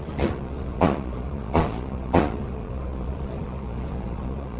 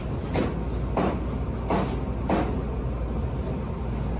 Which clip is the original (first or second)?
second